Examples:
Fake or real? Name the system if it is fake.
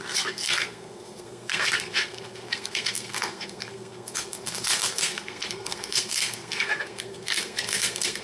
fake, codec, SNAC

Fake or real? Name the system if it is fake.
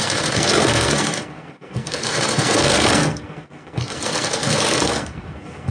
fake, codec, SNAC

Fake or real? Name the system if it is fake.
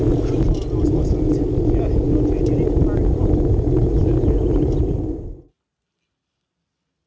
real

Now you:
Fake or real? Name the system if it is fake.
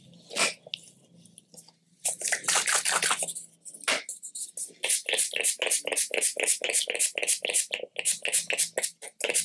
real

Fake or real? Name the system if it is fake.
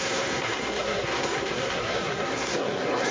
fake, codec, SNAC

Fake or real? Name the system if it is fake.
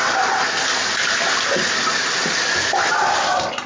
real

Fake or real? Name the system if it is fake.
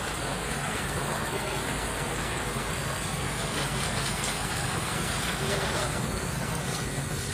fake, codec, SNAC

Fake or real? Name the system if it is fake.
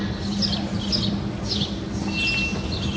real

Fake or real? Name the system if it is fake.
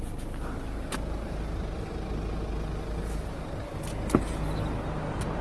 real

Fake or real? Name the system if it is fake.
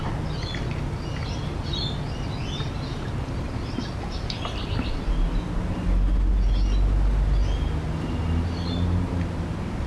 real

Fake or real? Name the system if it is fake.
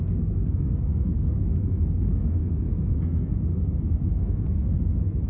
fake, codec, SNAC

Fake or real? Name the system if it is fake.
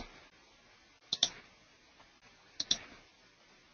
real